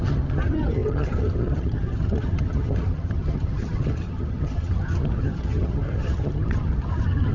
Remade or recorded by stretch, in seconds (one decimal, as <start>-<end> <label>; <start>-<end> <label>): 0.0-7.3 remade